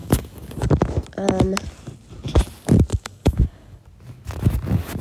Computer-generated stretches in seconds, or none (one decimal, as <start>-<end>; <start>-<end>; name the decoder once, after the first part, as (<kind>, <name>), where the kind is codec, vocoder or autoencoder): 0.0-0.7 (codec, DAC); 2.9-3.8